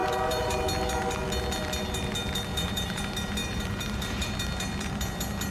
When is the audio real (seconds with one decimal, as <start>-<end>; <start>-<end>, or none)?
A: 0.6-2.5; 3.0-3.4; 4.3-5.5